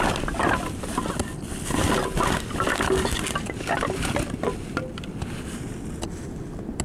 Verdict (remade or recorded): recorded